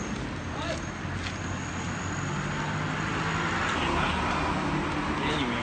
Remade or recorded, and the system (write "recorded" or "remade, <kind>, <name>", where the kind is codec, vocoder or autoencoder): recorded